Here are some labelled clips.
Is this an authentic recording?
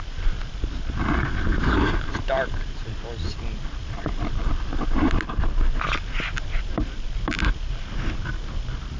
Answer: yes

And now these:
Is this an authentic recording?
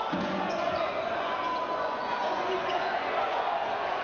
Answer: no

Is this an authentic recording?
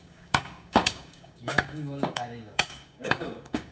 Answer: no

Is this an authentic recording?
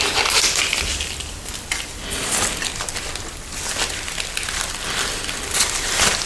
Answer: yes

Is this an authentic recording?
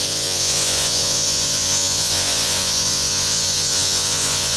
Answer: no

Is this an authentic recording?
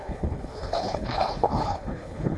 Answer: no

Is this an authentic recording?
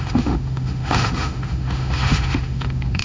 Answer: no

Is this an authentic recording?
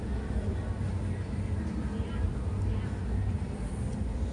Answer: yes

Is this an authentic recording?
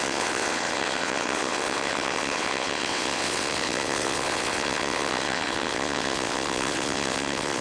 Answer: no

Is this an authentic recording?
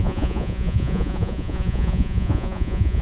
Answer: no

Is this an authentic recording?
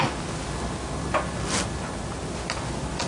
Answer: yes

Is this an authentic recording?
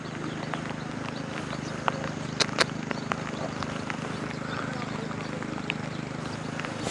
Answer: yes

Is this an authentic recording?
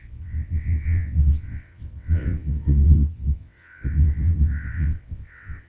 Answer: no